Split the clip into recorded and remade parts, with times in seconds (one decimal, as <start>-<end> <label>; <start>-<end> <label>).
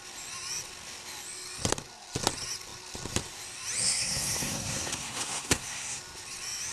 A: 0.0-3.8 recorded; 3.8-6.0 remade; 6.0-6.7 recorded